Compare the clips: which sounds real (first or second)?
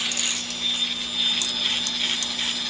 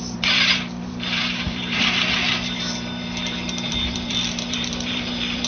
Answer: first